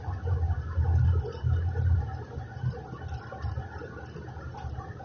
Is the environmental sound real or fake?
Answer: real